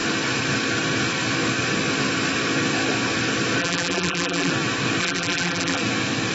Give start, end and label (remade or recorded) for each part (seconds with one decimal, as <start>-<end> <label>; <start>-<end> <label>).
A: 0.0-3.6 recorded; 3.6-4.5 remade; 4.5-5.0 recorded; 5.0-5.8 remade; 5.8-6.3 recorded